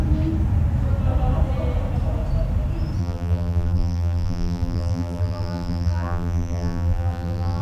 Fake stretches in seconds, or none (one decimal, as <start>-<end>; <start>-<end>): 3.0-7.6